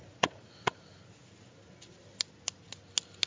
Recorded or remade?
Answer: recorded